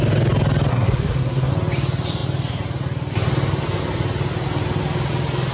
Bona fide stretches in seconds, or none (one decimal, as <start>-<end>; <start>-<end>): 0.0-0.7; 1.5-5.5